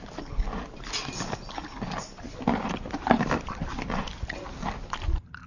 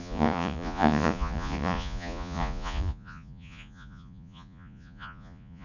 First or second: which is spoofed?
second